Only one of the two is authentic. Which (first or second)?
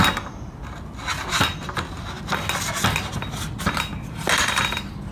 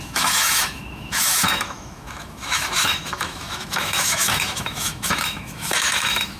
first